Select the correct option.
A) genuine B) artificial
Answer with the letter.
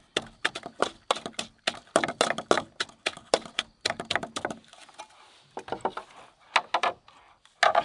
A